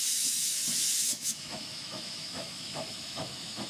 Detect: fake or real fake